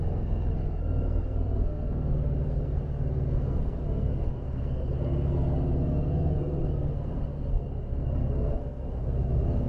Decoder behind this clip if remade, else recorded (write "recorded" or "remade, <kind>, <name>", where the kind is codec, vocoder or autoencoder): remade, codec, SNAC